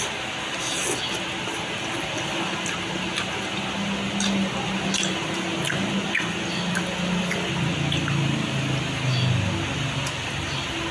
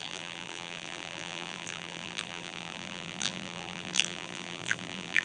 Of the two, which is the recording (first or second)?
first